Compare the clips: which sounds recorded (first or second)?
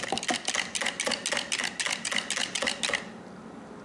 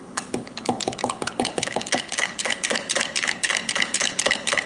first